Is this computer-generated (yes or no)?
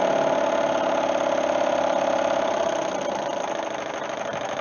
no